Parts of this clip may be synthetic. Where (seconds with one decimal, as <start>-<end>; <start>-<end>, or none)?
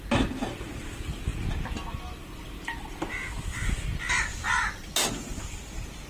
none